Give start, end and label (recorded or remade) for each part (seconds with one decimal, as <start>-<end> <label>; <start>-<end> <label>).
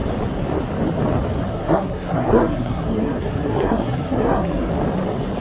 0.0-1.5 recorded; 1.5-4.7 remade; 4.7-5.4 recorded